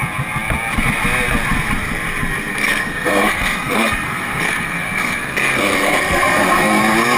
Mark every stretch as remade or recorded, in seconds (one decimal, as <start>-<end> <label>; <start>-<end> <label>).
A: 0.0-2.5 recorded; 2.5-6.8 remade; 6.8-7.2 recorded

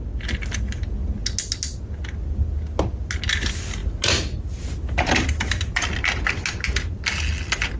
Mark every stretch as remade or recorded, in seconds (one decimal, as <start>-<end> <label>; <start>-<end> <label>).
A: 0.0-7.8 recorded

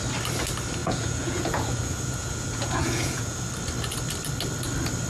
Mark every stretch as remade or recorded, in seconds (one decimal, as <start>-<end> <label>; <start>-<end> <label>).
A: 0.0-0.8 recorded; 0.8-3.5 remade; 3.5-5.1 recorded

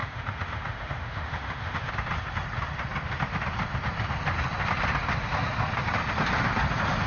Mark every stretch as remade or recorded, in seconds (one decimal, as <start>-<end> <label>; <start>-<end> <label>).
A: 0.0-1.9 remade; 1.9-7.1 recorded

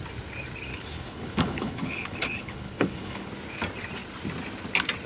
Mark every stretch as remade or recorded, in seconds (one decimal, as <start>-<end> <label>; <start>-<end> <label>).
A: 0.0-0.7 recorded; 0.7-3.3 remade; 3.3-5.1 recorded